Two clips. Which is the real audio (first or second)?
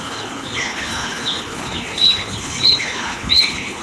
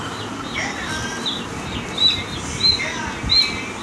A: second